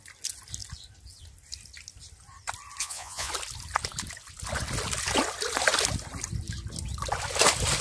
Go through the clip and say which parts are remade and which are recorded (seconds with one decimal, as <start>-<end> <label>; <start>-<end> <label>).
0.0-2.8 recorded; 2.8-3.3 remade; 3.3-7.8 recorded